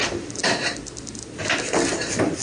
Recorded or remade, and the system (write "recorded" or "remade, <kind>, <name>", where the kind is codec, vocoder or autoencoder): recorded